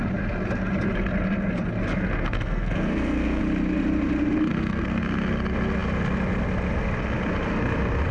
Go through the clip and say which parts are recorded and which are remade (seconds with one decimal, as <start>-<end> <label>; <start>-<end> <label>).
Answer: 0.0-1.9 recorded; 1.9-3.4 remade; 3.4-4.5 recorded; 4.5-5.0 remade; 5.0-8.1 recorded